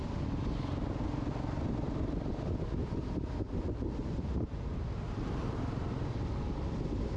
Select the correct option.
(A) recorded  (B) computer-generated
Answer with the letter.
A